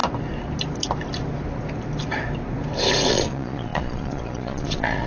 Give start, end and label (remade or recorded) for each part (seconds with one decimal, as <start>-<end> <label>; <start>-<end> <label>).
0.0-3.1 recorded; 3.1-5.1 remade